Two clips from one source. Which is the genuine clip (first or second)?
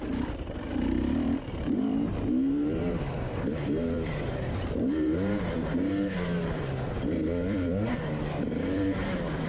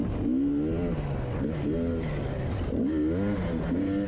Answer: second